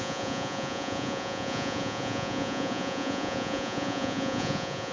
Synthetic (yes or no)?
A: yes